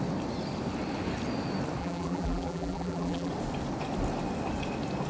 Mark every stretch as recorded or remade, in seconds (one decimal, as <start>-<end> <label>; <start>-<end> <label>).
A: 0.0-1.8 recorded; 1.8-3.3 remade; 3.3-5.1 recorded